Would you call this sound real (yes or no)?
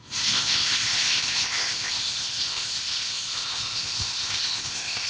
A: no